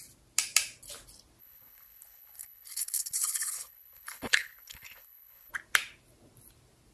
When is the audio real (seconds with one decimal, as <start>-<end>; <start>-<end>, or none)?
0.0-1.4; 5.5-6.9